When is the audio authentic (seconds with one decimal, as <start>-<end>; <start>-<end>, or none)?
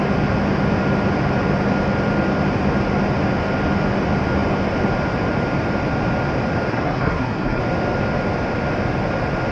0.0-6.7; 7.6-9.5